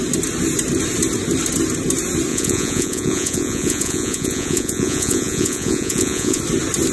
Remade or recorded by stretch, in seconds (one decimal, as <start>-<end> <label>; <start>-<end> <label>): 0.0-2.3 recorded; 2.3-6.4 remade; 6.4-6.9 recorded